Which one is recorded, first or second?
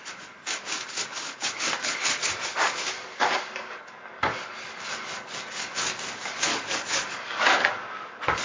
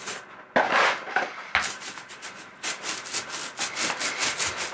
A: second